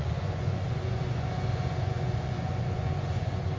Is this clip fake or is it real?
fake